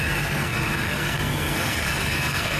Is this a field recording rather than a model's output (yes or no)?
no